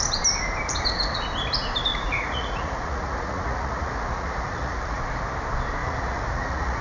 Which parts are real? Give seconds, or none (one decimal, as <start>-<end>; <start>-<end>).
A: 0.0-1.9; 5.0-5.8